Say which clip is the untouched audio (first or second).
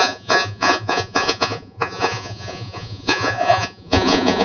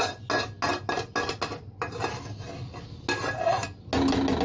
second